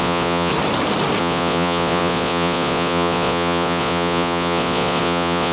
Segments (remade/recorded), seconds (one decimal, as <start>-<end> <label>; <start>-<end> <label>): 0.0-0.5 remade; 0.5-1.2 recorded; 1.2-5.5 remade